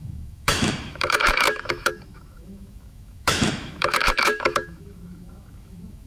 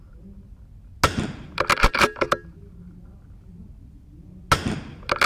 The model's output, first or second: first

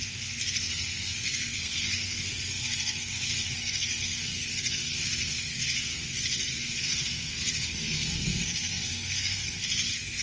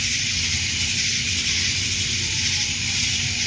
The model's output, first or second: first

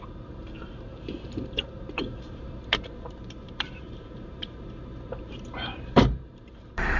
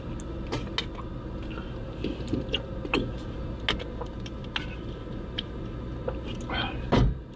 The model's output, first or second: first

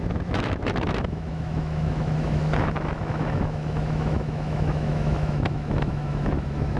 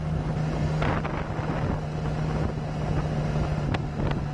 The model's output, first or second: first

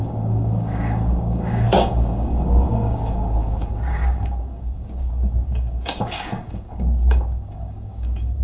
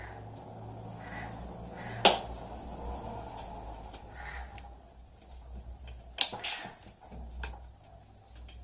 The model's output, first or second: first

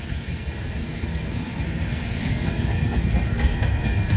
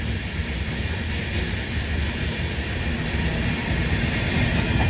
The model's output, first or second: first